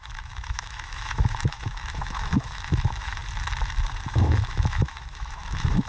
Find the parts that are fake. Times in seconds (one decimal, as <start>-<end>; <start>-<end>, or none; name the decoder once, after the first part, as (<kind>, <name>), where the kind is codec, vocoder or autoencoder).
0.0-3.2 (autoencoder, DAC-VAE); 4.1-5.9